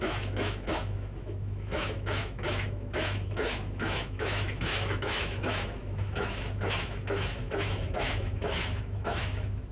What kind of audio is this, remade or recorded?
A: remade